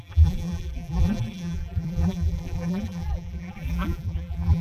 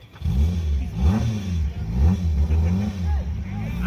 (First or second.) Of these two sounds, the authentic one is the second